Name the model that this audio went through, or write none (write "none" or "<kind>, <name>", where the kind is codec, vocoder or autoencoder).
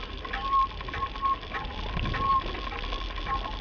none